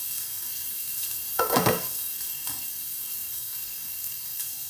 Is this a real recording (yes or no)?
no